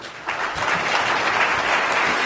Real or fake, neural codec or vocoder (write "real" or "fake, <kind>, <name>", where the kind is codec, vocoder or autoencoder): real